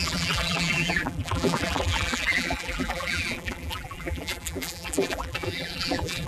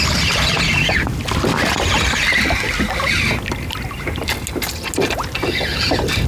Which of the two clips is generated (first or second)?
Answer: first